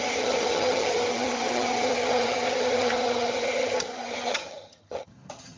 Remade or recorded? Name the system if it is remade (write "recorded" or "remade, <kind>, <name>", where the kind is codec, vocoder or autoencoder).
remade, vocoder, HiFi-GAN